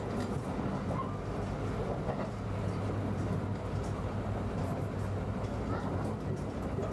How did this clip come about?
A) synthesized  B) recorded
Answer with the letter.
B